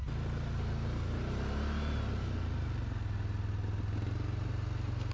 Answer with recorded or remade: recorded